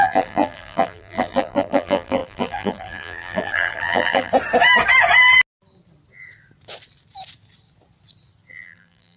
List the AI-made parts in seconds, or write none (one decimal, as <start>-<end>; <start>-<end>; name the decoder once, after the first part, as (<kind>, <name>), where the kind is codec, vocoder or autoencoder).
0.0-4.3 (vocoder, BigVGAN v2); 8.5-9.2